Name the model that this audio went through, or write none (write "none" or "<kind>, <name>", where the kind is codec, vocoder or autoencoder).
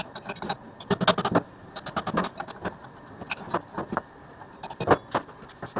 none